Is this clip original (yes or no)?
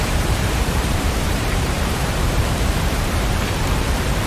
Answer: no